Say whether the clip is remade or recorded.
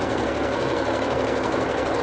remade